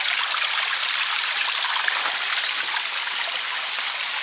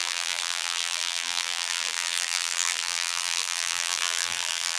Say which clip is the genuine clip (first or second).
first